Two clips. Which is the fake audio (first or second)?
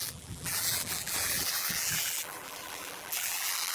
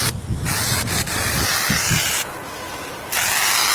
first